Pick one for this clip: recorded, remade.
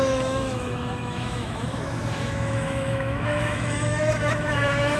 remade